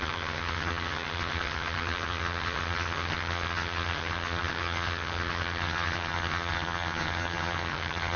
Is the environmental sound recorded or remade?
remade